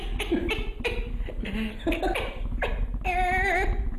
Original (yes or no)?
yes